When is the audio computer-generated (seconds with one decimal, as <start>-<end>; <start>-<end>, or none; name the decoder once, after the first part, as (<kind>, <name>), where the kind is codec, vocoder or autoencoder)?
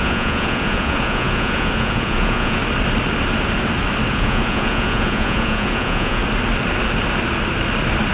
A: 0.0-2.6 (vocoder, Vocos); 4.1-6.2